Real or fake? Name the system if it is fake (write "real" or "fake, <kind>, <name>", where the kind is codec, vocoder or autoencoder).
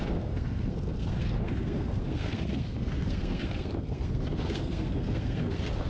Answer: fake, codec, SNAC